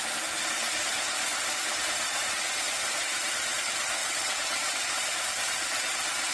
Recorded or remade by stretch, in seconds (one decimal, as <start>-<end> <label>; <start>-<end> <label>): 0.0-4.0 recorded; 4.0-4.9 remade; 4.9-6.3 recorded